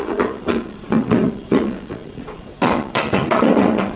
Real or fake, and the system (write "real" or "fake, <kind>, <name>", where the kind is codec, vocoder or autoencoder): fake, vocoder, Vocos